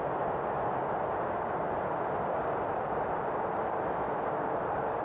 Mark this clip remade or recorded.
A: recorded